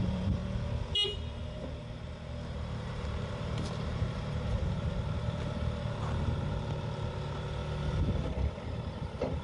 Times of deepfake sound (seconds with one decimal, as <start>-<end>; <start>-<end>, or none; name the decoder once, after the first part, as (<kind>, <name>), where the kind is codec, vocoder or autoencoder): 0.0-0.4 (vocoder, BigVGAN v2); 1.3-7.6